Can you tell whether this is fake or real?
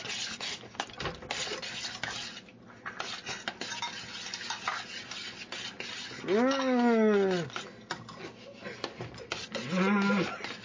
real